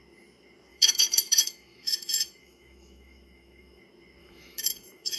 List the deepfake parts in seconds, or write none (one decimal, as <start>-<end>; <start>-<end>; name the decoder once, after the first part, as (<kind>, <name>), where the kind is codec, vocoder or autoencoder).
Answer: 0.7-3.8 (autoencoder, DAC-VAE); 4.2-5.2